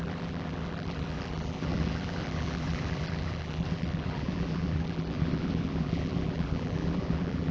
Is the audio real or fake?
fake